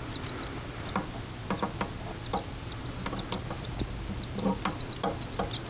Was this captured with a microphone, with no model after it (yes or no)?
yes